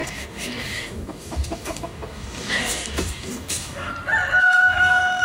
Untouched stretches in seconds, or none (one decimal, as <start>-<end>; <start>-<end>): 3.9-4.4